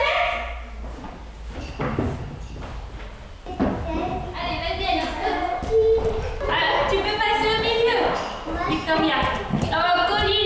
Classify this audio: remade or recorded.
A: recorded